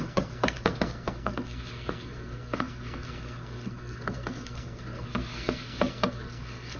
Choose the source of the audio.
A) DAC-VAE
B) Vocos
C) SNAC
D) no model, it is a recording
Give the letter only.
C